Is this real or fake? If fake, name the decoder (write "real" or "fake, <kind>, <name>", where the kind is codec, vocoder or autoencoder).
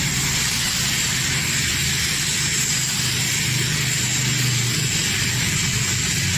real